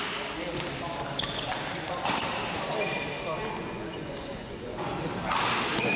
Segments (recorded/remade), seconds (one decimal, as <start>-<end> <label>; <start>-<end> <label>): 0.0-3.6 recorded; 3.6-4.9 remade; 4.9-6.0 recorded